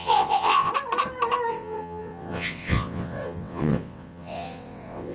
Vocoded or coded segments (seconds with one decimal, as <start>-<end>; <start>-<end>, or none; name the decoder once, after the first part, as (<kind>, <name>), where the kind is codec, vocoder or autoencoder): 0.0-0.7 (vocoder, WaveNeXt); 1.5-5.1